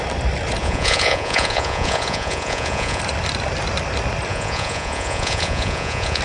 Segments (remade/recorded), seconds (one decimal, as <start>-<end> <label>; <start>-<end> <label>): 0.0-0.6 recorded; 0.6-3.0 remade; 3.0-4.3 recorded; 4.3-6.2 remade